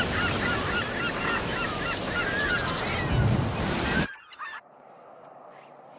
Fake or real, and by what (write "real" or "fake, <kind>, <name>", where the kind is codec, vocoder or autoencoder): real